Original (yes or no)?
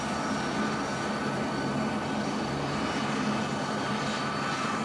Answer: yes